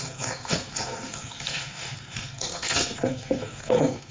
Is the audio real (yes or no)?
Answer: no